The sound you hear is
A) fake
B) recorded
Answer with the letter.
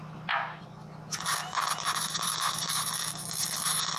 B